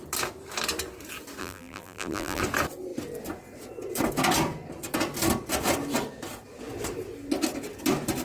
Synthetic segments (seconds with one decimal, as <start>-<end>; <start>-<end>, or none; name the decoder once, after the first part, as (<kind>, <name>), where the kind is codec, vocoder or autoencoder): 1.4-2.4 (vocoder, BigVGAN v2)